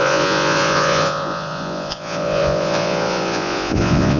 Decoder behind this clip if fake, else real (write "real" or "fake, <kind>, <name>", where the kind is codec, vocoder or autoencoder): fake, vocoder, Vocos